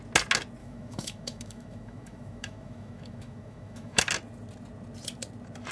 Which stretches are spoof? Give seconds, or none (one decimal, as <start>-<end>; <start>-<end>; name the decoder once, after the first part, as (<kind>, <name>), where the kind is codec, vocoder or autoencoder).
0.6-4.0 (autoencoder, DAC-VAE)